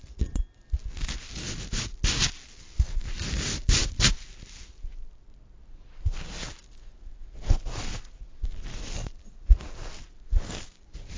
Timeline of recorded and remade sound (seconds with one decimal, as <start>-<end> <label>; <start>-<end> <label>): 0.0-11.2 recorded